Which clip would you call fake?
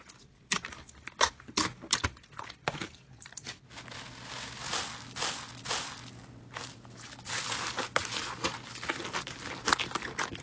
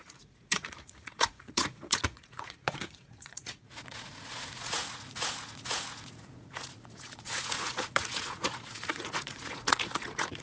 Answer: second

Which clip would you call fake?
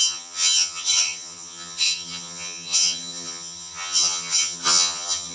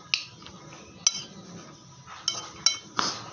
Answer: first